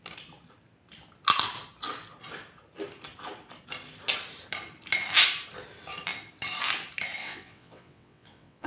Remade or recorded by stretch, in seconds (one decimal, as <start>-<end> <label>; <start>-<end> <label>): 0.0-7.2 recorded; 7.2-8.7 remade